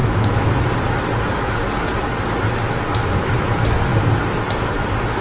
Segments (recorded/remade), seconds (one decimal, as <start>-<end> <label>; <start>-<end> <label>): 0.0-0.6 remade; 0.6-5.2 recorded